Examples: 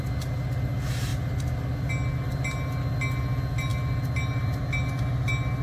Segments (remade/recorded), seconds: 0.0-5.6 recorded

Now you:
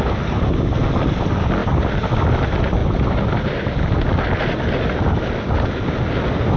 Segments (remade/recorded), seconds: 0.0-6.6 recorded

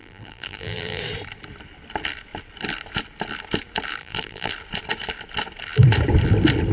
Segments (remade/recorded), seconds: 0.0-1.0 remade; 1.0-4.0 recorded; 4.0-4.5 remade; 4.5-6.7 recorded

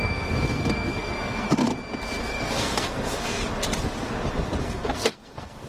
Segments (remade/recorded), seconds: 0.0-1.7 remade; 1.7-2.2 recorded; 2.2-3.4 remade; 3.4-4.6 recorded; 4.6-5.7 remade

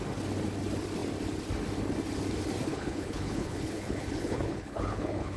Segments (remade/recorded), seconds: 0.0-2.7 recorded; 2.7-5.4 remade

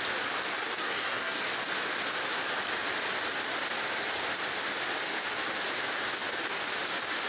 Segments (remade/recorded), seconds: 0.0-0.8 recorded; 0.8-1.4 remade; 1.4-7.3 recorded

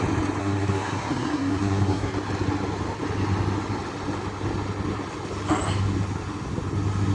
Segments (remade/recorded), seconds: 0.0-0.4 recorded; 0.4-2.1 remade; 2.1-7.1 recorded

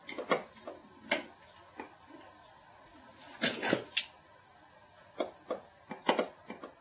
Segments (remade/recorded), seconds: 0.0-6.8 recorded